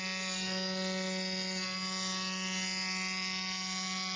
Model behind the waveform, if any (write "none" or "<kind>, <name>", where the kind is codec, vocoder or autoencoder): none